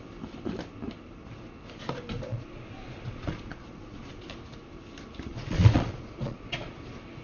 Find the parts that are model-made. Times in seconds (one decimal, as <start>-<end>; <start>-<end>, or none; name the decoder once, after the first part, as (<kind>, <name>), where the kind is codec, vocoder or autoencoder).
2.3-4.3 (vocoder, Vocos); 5.3-6.7